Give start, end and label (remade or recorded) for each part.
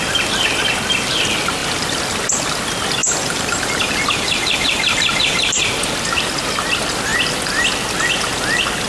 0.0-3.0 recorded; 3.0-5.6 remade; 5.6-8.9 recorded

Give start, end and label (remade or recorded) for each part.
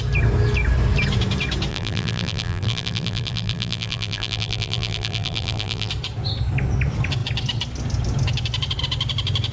0.0-1.7 recorded; 1.7-5.9 remade; 5.9-9.5 recorded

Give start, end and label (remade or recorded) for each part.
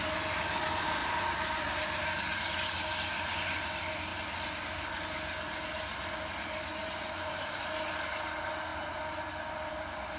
0.0-1.0 recorded; 1.0-2.4 remade; 2.4-6.8 recorded; 6.8-7.6 remade; 7.6-10.2 recorded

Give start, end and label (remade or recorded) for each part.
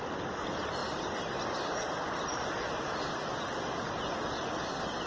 0.0-5.1 recorded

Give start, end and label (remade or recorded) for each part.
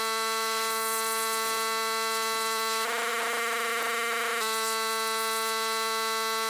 0.0-6.5 recorded